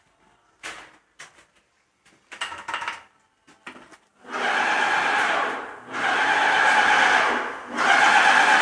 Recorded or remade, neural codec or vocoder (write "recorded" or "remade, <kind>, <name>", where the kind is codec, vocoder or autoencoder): recorded